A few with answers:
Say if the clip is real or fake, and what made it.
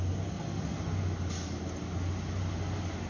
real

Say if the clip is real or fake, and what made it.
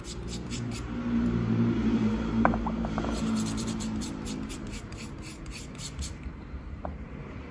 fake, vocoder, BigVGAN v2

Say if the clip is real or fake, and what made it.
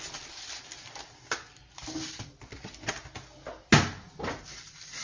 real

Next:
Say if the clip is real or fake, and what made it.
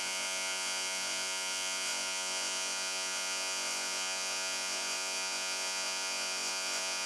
fake, vocoder, Vocos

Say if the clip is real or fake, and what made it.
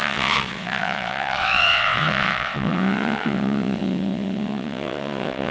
fake, vocoder, WaveNeXt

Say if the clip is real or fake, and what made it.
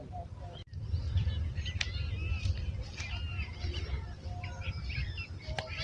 real